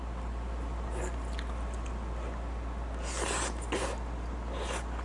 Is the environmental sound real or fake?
real